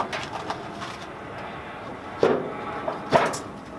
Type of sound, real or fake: real